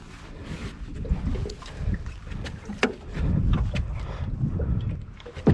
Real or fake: real